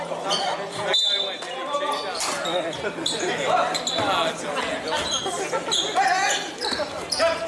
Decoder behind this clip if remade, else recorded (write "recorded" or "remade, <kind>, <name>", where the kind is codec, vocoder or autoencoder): recorded